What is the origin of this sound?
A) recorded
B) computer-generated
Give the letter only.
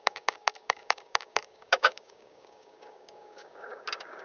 B